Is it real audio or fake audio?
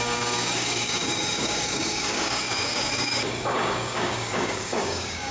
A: fake